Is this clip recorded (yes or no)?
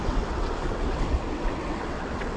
no